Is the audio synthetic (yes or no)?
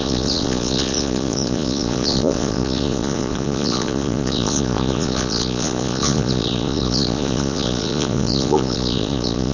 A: yes